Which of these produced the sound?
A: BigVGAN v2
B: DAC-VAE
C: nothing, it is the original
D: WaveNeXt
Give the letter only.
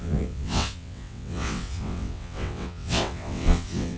D